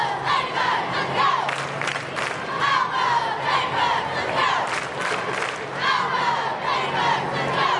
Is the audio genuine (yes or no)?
yes